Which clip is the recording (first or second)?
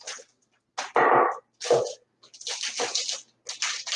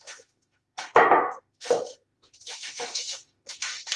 first